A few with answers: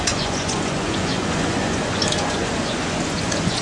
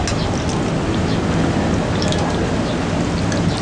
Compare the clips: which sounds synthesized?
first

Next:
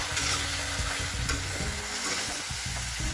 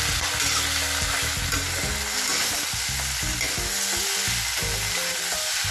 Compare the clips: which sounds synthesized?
first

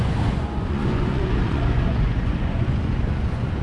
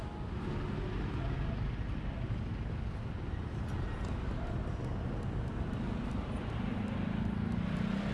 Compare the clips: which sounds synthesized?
first